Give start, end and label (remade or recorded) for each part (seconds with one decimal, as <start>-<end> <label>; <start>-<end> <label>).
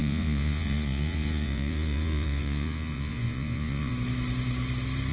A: 0.0-3.9 remade; 3.9-5.1 recorded